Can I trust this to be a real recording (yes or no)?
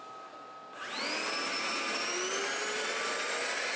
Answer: yes